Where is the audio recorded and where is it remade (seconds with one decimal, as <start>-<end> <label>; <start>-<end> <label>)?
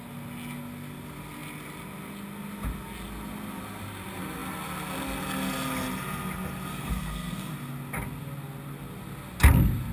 0.0-6.7 recorded; 6.7-7.5 remade; 7.5-9.9 recorded